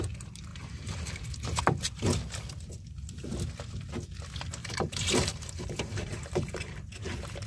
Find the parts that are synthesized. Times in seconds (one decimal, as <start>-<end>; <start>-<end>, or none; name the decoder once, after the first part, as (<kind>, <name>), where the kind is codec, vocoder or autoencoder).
0.5-1.2 (vocoder, BigVGAN v2); 4.6-6.8